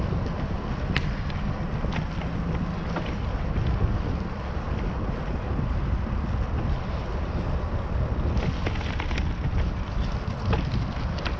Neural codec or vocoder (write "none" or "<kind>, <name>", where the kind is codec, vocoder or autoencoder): none